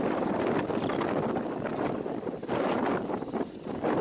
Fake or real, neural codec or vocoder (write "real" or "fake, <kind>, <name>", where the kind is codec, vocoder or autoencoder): real